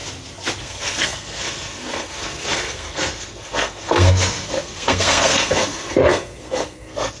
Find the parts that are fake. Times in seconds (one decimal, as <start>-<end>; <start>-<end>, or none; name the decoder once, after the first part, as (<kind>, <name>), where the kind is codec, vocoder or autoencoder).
0.6-7.2 (codec, SNAC)